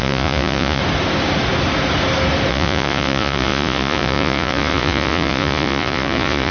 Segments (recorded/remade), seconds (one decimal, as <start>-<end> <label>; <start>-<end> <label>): 0.0-0.8 remade; 0.8-2.5 recorded; 2.5-6.5 remade